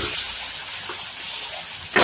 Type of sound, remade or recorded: recorded